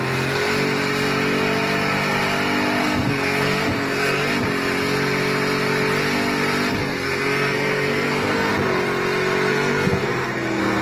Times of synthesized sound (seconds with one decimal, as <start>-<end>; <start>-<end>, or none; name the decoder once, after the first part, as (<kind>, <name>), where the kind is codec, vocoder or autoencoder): 2.8-4.3 (codec, SNAC); 6.8-8.5; 9.5-10.8

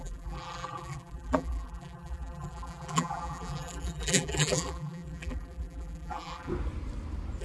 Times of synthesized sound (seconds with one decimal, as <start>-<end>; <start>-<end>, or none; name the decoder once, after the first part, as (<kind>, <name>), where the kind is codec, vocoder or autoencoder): 0.0-6.5 (vocoder, BigVGAN v2)

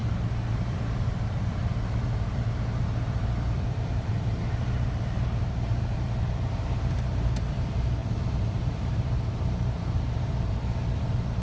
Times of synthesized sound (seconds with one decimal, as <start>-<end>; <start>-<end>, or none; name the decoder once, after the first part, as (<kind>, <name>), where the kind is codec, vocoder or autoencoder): 0.7-11.4 (vocoder, BigVGAN v2)

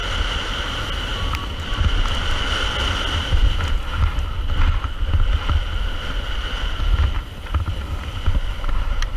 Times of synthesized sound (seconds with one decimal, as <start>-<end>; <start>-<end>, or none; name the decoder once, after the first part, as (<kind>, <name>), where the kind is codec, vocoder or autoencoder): none

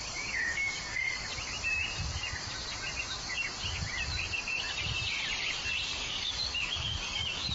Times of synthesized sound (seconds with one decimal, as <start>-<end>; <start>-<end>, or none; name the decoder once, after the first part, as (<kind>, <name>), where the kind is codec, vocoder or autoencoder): 0.0-1.3 (codec, DAC); 5.8-7.5

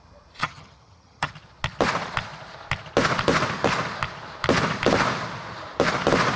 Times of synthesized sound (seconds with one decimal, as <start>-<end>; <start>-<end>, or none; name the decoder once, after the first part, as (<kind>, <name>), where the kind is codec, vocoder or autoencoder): 0.4-1.3 (vocoder, HiFi-GAN)